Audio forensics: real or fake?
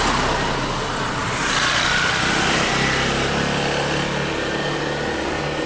real